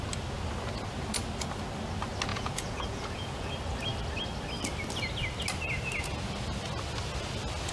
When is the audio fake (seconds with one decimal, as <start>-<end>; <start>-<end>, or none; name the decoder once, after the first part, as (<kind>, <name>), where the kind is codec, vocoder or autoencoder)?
2.3-3.5 (vocoder, Vocos)